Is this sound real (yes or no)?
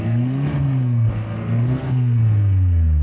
no